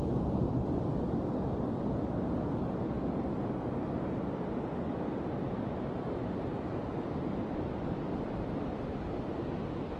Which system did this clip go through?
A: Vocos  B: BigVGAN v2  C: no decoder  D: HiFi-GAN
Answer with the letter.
B